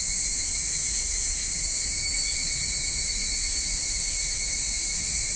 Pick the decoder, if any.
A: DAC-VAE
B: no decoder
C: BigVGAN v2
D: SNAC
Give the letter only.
A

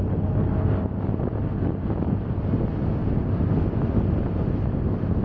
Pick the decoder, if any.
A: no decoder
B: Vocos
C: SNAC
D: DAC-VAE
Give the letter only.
A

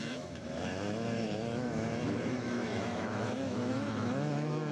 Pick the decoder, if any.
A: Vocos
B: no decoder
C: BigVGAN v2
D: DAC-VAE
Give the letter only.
D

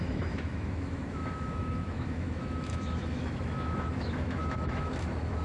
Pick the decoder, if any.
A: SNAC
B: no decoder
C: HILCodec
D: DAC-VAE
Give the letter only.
D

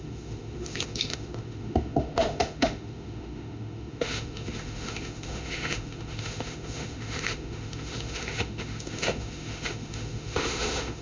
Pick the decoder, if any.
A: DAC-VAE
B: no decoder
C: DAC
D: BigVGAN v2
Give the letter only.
A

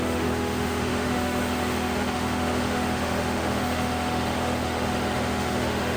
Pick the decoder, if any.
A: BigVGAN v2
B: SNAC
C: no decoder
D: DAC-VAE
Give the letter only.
D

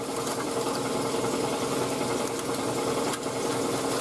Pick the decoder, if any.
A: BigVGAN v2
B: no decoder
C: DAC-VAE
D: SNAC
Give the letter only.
B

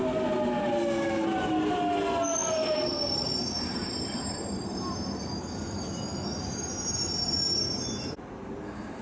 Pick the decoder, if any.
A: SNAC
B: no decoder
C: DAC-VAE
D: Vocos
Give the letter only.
B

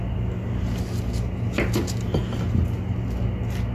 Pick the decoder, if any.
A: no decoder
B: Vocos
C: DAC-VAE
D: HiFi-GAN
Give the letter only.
A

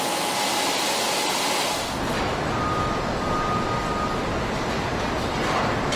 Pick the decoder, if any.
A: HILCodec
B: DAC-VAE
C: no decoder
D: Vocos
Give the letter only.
C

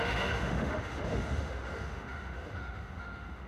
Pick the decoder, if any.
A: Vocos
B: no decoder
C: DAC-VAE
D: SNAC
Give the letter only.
C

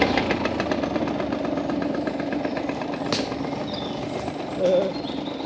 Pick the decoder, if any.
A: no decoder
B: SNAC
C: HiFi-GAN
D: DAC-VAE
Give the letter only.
A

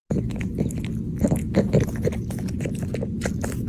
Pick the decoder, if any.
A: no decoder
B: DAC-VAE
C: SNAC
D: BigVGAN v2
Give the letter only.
A